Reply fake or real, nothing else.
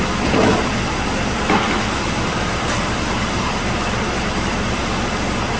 fake